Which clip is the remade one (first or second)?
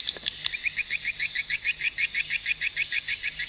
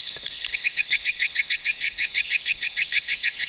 second